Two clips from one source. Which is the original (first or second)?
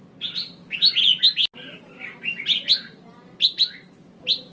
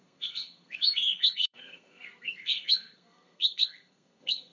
first